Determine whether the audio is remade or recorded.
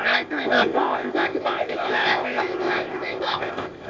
remade